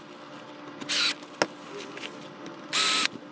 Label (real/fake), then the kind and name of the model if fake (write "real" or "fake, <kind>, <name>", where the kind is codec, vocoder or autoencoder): real